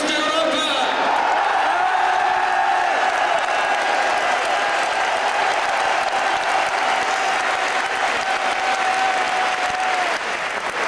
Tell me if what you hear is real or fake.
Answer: real